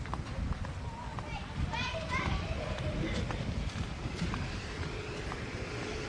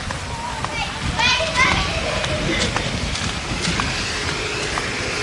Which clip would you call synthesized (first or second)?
first